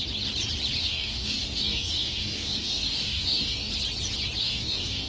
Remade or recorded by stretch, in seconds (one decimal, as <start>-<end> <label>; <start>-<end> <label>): 0.0-0.8 recorded; 0.8-3.7 remade; 3.7-4.4 recorded; 4.4-5.1 remade